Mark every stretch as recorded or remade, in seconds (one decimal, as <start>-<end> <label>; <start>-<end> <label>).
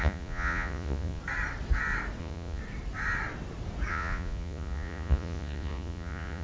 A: 0.0-1.2 remade; 1.2-2.2 recorded; 2.2-2.6 remade; 2.6-3.9 recorded; 3.9-6.4 remade